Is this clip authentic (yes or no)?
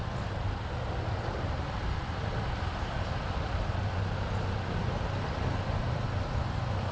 yes